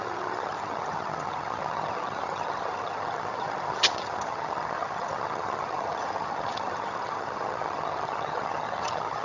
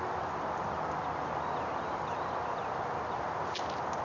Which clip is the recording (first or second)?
second